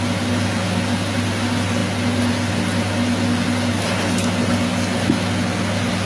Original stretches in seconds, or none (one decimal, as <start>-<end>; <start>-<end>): 0.0-6.1